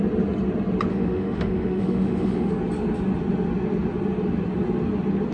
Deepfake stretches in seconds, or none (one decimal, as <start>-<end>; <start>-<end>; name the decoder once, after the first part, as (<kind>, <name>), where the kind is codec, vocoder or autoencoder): 0.9-2.5 (autoencoder, DAC-VAE)